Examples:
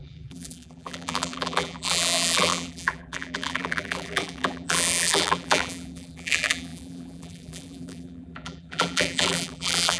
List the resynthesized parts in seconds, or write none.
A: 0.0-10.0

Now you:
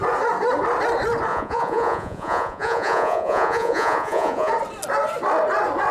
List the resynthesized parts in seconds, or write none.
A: 1.3-4.5

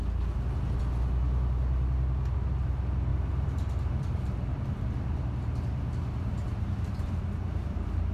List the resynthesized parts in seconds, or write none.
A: 3.1-8.1

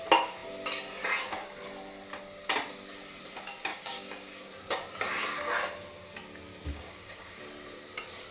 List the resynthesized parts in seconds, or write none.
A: 3.7-4.5; 6.7-7.4